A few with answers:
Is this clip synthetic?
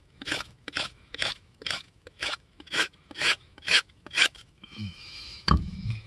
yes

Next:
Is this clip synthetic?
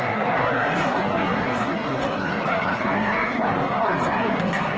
yes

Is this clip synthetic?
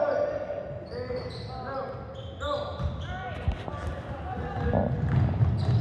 no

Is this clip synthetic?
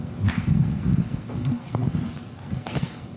yes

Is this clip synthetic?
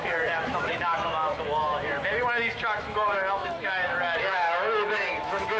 yes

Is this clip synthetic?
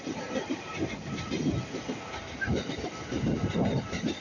yes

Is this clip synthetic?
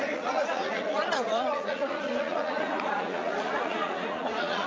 yes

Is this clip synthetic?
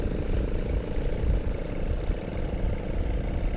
no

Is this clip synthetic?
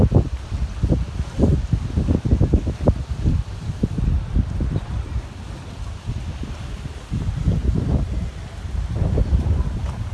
no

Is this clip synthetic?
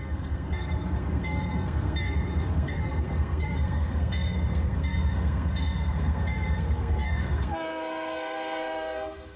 yes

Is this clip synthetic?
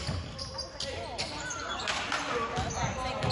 no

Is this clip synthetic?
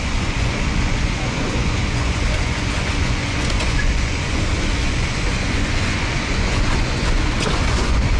yes